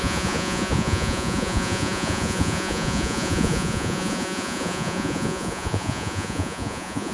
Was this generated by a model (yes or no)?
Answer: yes